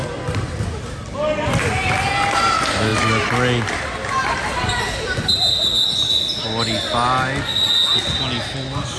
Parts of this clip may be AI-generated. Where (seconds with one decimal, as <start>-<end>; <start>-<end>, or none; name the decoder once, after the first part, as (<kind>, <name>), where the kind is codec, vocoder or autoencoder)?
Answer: none